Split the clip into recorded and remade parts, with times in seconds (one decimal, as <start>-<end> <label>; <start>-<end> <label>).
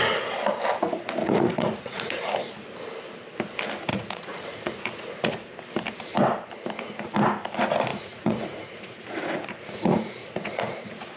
0.0-1.2 recorded; 1.2-2.2 remade; 2.2-3.9 recorded; 3.9-5.5 remade; 5.5-7.9 recorded; 7.9-11.2 remade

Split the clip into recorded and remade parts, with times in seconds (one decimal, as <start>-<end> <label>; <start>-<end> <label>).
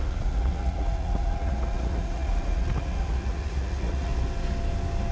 0.0-4.1 remade; 4.1-5.1 recorded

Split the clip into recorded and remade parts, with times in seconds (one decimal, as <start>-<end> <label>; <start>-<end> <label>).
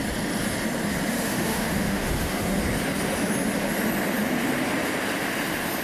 0.0-1.1 recorded; 1.1-2.6 remade; 2.6-5.8 recorded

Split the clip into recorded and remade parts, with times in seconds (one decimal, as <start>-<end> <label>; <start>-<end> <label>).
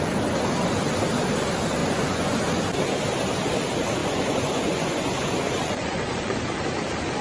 0.0-1.8 recorded; 1.8-2.6 remade; 2.6-4.0 recorded; 4.0-6.4 remade; 6.4-7.2 recorded